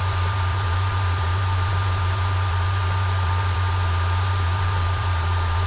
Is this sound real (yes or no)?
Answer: no